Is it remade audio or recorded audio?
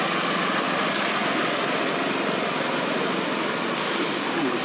recorded